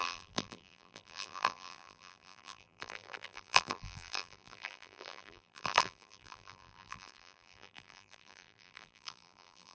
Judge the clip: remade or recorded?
remade